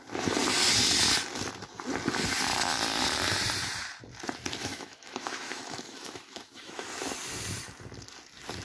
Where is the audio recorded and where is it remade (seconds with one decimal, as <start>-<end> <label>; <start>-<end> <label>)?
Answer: 0.0-4.6 recorded; 4.6-6.9 remade; 6.9-8.6 recorded